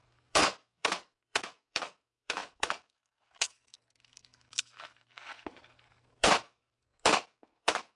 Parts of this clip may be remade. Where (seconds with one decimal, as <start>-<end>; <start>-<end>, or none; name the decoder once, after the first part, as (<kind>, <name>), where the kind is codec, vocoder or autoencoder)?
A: 0.0-8.0 (codec, SNAC)